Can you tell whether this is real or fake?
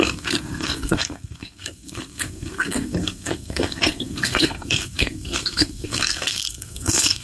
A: fake